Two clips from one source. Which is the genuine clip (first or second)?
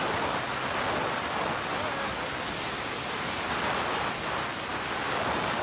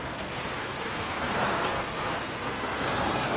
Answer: first